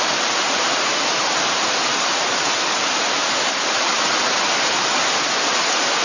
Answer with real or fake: real